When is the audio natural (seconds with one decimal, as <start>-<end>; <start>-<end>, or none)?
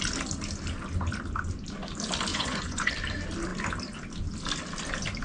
0.0-2.3; 2.9-5.2